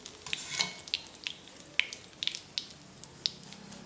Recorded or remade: recorded